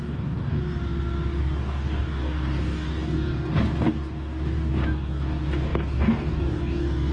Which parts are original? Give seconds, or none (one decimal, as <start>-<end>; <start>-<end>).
0.6-1.4

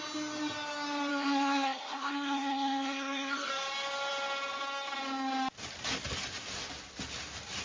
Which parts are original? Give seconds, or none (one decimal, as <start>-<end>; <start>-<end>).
0.0-1.1; 3.5-7.6

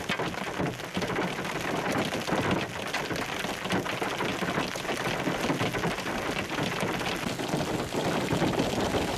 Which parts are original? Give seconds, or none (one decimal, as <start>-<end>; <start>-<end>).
0.0-9.2

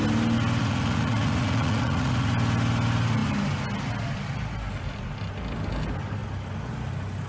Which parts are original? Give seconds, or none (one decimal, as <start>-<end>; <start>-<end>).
0.0-0.6; 2.3-7.3

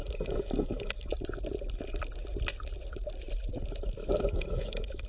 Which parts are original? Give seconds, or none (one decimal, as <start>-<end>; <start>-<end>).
1.1-4.2